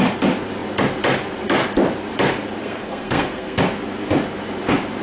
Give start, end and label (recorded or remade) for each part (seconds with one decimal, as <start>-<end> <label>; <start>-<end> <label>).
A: 0.0-2.6 recorded; 2.6-3.6 remade; 3.6-5.0 recorded